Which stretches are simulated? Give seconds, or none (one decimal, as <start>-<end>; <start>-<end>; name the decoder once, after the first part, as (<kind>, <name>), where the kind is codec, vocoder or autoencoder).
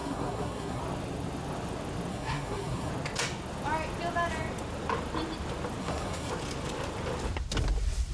0.0-0.8 (codec, SNAC); 2.1-2.9; 5.8-6.3